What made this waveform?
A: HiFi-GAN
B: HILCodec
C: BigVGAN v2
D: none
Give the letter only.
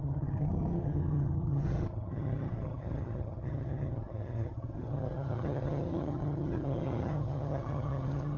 A